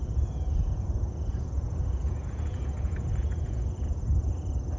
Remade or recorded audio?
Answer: remade